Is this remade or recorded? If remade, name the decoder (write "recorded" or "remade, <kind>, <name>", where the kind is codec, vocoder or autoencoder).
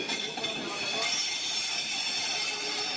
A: recorded